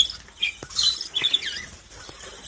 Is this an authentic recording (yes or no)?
yes